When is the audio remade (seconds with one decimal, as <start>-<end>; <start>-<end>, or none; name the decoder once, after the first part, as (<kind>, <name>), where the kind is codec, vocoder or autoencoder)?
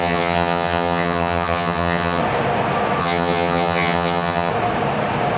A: 0.0-2.2 (vocoder, HiFi-GAN); 3.0-4.5